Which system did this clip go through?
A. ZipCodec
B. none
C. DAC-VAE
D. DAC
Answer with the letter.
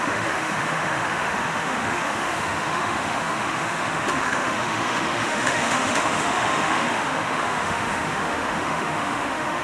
C